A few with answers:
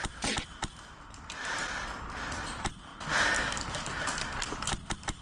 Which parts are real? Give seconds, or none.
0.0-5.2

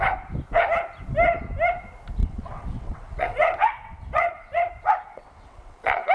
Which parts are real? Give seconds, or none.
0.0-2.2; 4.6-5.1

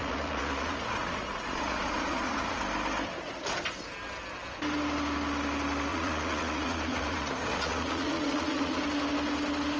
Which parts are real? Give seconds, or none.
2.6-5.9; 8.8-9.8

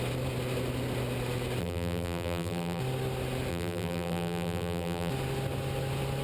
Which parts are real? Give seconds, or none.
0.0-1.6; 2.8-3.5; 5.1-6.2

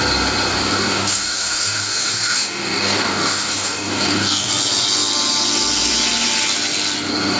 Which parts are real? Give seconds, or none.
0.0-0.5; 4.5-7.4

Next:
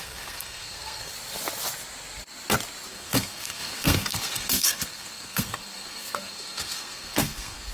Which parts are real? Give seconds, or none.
1.1-2.9